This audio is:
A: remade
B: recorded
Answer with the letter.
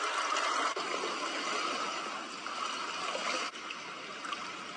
B